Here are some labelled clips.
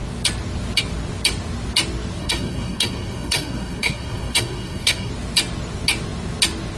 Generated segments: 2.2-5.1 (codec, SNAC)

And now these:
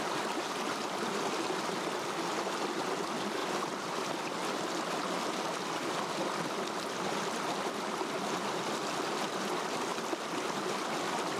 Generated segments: 9.9-10.8 (vocoder, BigVGAN v2)